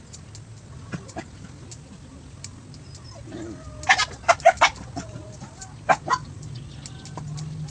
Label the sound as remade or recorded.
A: recorded